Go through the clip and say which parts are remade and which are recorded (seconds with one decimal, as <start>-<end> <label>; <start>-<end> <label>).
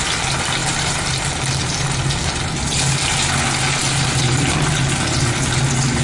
0.0-0.6 recorded; 0.6-1.3 remade; 1.3-6.0 recorded